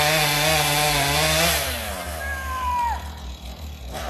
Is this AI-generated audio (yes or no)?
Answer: no